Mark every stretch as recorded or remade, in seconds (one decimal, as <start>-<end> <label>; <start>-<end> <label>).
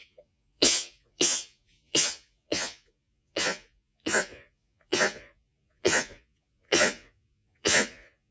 0.0-8.3 remade